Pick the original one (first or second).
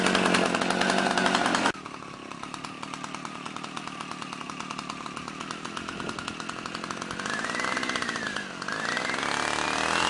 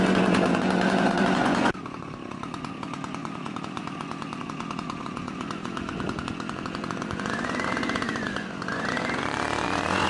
first